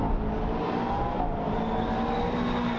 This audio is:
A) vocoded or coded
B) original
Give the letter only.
B